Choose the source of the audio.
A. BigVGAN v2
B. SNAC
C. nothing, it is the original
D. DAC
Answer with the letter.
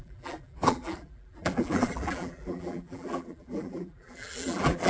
A